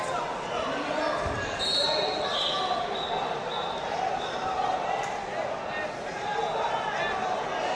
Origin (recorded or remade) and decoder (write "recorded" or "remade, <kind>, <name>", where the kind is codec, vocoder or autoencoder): recorded